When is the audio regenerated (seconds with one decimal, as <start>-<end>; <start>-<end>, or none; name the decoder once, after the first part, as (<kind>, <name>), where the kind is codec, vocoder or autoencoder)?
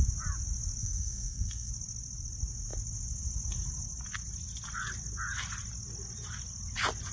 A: 0.8-1.7 (codec, SNAC)